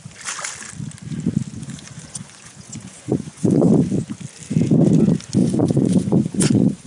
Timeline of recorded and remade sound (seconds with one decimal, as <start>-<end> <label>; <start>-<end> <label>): 0.0-1.5 recorded; 1.5-3.7 remade; 3.7-5.4 recorded; 5.4-6.9 remade